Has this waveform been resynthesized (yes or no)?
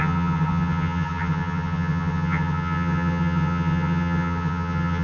yes